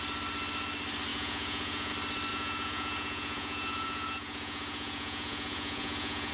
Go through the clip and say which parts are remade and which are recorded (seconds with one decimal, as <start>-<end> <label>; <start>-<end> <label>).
0.0-1.1 recorded; 1.1-1.9 remade; 1.9-2.3 recorded; 2.3-6.3 remade